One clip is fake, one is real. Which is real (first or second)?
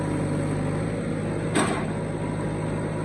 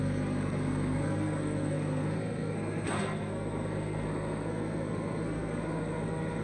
first